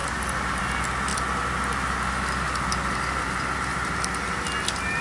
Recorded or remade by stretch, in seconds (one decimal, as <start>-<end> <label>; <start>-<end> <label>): 0.0-5.0 recorded